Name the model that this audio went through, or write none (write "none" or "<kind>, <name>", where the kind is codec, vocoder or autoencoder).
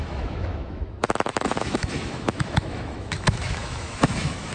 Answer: autoencoder, DAC-VAE